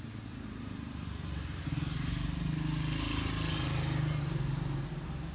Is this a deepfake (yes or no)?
no